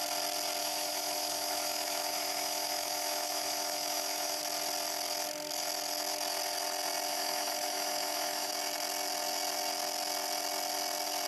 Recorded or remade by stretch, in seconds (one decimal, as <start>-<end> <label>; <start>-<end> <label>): 0.0-0.6 recorded; 0.6-4.4 remade; 4.4-7.1 recorded; 7.1-8.5 remade; 8.5-11.3 recorded